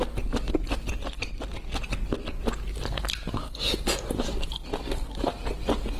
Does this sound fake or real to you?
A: real